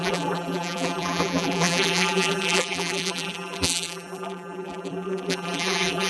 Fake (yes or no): yes